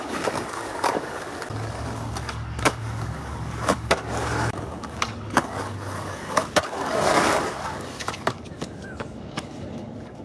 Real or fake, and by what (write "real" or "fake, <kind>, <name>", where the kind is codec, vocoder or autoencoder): fake, codec, DAC